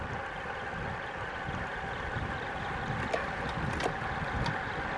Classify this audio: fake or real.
real